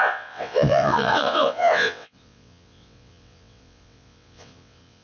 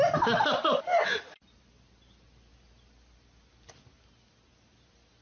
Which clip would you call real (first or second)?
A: second